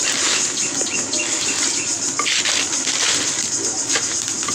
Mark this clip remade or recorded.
recorded